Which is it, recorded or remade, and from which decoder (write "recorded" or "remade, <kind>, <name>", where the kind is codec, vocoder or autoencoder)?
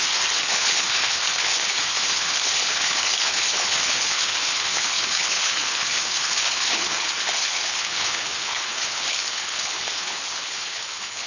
remade, codec, HILCodec